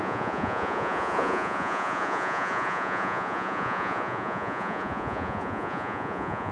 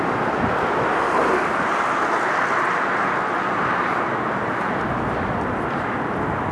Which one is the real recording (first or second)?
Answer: second